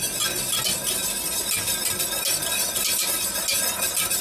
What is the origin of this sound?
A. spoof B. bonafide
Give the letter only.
B